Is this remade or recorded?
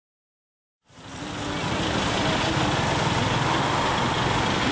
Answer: recorded